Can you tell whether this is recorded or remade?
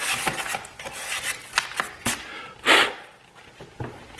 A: recorded